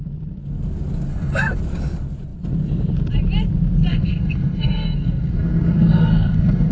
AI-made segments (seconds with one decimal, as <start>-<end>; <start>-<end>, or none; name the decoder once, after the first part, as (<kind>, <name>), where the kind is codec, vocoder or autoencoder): 1.1-1.6 (codec, SNAC); 3.9-6.7